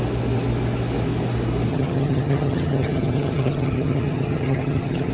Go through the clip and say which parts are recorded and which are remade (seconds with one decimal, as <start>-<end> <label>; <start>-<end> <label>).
0.0-1.7 recorded; 1.7-5.1 remade